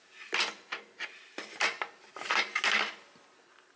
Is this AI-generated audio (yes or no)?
no